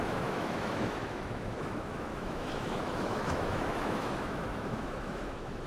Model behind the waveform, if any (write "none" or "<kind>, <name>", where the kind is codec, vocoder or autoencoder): autoencoder, DAC-VAE